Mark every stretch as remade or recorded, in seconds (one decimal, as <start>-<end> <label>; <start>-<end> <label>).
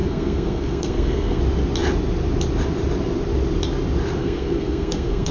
0.0-1.4 remade; 1.4-4.2 recorded; 4.2-5.3 remade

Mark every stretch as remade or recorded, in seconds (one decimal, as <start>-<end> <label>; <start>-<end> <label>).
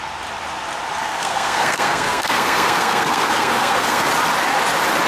0.0-1.0 recorded; 1.0-4.1 remade; 4.1-5.1 recorded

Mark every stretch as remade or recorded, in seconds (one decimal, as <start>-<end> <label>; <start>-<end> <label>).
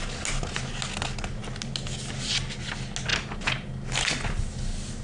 0.0-5.0 recorded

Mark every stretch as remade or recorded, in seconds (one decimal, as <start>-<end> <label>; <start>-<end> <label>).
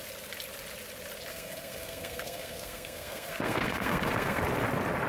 0.0-1.3 recorded; 1.3-4.4 remade; 4.4-5.1 recorded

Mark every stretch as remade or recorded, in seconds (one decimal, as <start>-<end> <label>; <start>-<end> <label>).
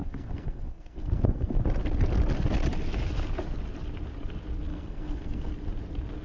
0.0-1.6 remade; 1.6-4.7 recorded; 4.7-5.5 remade; 5.5-6.2 recorded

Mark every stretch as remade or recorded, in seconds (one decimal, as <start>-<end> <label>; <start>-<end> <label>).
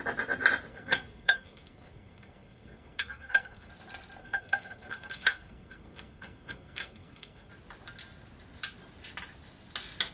0.0-0.7 recorded; 0.7-3.7 remade; 3.7-4.2 recorded; 4.2-7.5 remade; 7.5-10.1 recorded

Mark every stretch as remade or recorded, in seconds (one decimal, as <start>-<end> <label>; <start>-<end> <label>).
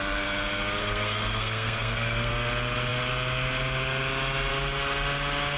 0.0-0.8 recorded; 0.8-2.3 remade; 2.3-5.6 recorded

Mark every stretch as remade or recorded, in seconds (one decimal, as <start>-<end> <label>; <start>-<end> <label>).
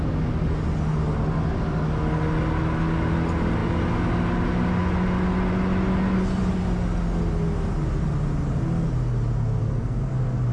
0.0-9.6 recorded; 9.6-10.1 remade; 10.1-10.5 recorded